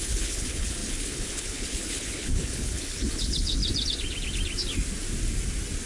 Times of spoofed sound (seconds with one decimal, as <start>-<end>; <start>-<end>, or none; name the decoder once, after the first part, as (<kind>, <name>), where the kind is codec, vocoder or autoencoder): 0.0-3.6 (codec, HILCodec)